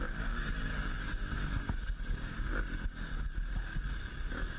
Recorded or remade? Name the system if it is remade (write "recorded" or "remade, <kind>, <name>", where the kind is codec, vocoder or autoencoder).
remade, codec, DAC